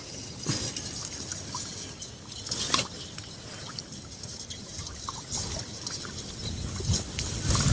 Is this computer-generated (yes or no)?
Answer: no